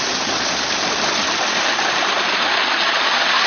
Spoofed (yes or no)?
no